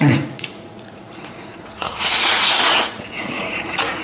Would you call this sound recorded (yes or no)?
no